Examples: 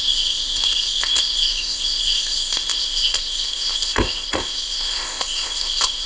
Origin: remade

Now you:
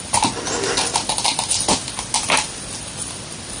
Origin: recorded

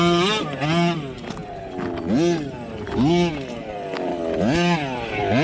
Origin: recorded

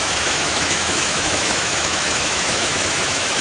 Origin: remade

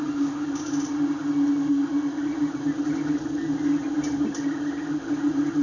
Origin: recorded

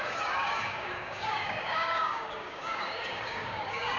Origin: remade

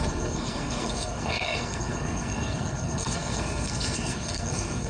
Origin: remade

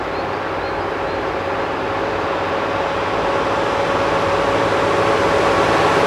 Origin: recorded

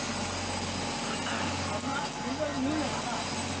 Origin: recorded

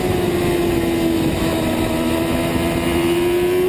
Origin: recorded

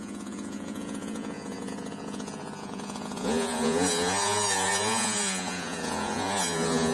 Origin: remade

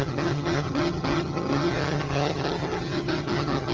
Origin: remade